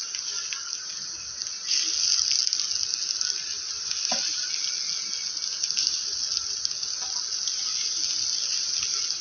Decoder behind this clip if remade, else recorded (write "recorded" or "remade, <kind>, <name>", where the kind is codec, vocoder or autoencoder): recorded